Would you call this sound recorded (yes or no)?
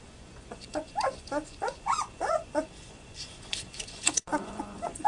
no